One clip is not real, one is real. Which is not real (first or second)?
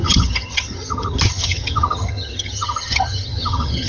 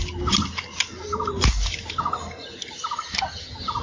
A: first